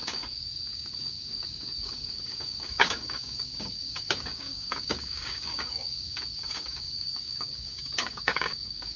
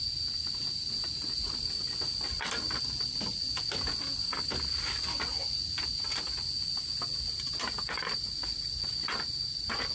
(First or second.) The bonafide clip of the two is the second